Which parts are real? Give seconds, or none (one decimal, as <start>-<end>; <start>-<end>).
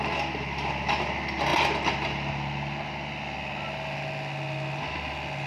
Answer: 0.0-5.5